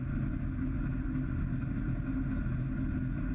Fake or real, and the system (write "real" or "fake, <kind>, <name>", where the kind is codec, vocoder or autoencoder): real